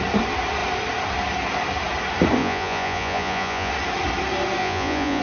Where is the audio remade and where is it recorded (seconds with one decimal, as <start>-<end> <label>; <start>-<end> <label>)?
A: 0.0-2.4 recorded; 2.4-3.7 remade; 3.7-4.6 recorded; 4.6-5.2 remade